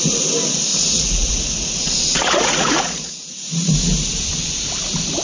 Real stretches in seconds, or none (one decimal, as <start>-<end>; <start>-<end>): 0.0-0.7; 3.7-5.2